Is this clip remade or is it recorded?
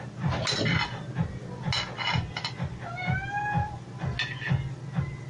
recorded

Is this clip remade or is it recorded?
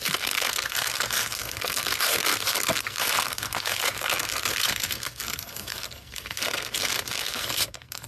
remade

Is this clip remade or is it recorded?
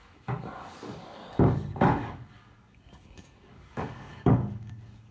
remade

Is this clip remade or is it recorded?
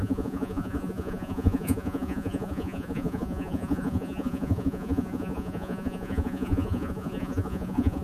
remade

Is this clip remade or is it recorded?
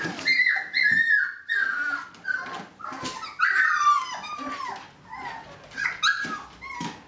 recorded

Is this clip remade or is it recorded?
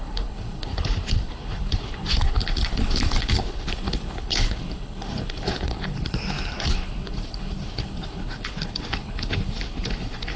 remade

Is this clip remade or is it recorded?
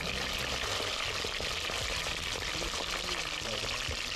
recorded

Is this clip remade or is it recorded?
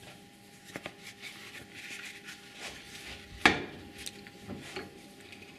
recorded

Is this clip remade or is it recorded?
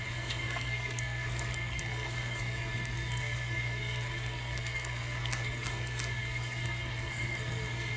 remade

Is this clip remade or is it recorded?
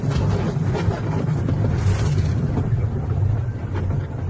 recorded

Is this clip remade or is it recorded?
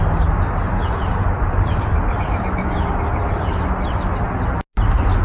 recorded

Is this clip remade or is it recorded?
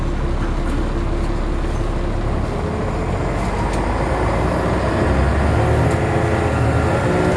recorded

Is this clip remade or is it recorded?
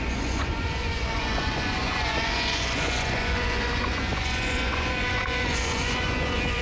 remade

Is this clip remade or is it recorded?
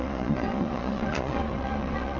remade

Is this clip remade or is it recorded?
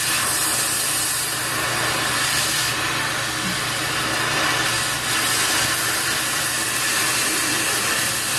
recorded